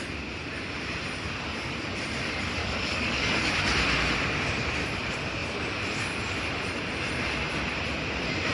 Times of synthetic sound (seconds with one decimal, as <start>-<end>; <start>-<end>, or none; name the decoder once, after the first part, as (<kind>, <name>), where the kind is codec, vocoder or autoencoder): 2.6-3.5 (codec, DAC)